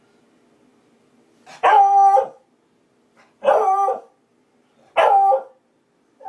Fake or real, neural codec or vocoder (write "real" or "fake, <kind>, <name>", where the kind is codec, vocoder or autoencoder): real